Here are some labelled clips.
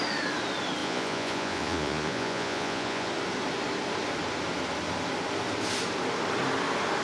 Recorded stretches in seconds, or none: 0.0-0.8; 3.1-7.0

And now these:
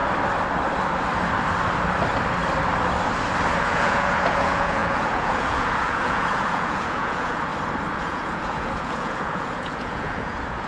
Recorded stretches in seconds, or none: 0.0-3.6; 7.5-8.0

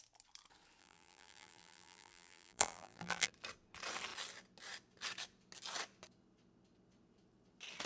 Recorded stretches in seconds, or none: 0.0-0.8; 3.3-7.9

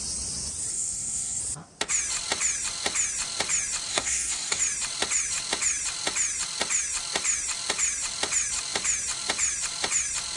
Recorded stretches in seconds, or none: 0.0-0.7; 1.4-3.9; 4.6-10.4

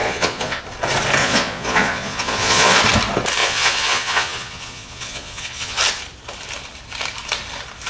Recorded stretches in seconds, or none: 0.6-1.2; 2.8-3.4; 5.8-7.9